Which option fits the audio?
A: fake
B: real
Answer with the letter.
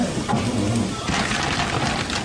B